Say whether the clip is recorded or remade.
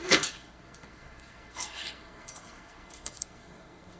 remade